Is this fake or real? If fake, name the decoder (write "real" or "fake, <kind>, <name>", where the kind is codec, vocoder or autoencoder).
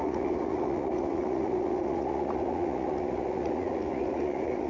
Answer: fake, vocoder, Vocos